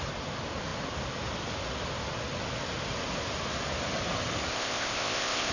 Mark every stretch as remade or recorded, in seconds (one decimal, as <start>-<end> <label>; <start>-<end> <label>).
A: 0.0-4.5 recorded; 4.5-5.5 remade